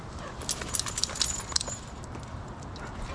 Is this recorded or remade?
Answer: recorded